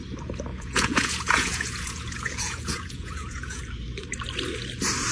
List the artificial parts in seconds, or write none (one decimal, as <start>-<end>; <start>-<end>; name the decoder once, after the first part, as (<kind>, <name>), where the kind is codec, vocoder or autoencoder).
0.5-3.6 (vocoder, Vocos)